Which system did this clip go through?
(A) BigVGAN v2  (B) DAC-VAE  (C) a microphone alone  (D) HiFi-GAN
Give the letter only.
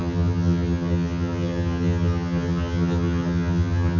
D